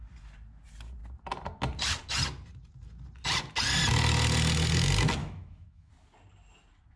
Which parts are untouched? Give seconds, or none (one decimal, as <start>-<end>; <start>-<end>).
0.0-5.2; 5.9-7.0